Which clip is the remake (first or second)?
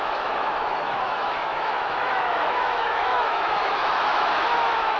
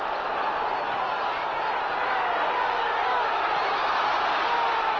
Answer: first